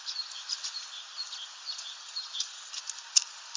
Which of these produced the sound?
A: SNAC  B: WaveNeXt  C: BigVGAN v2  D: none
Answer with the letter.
D